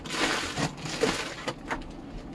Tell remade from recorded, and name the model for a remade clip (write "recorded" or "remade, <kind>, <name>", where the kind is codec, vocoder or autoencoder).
recorded